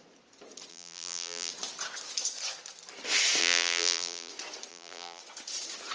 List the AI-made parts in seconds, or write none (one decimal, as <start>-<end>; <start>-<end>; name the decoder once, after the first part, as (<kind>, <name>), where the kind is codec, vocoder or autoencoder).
0.7-1.5 (vocoder, BigVGAN v2); 3.4-4.3; 4.7-5.2